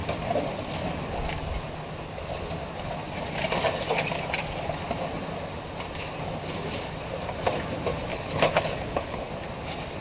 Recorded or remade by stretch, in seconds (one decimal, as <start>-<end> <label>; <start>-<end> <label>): 0.0-8.1 recorded; 8.1-9.3 remade; 9.3-10.0 recorded